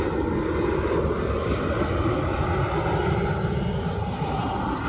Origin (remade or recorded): recorded